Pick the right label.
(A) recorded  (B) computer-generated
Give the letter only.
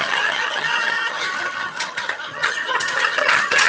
B